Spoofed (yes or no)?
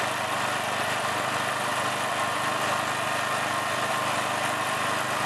no